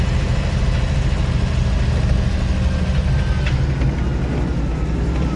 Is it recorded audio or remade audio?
recorded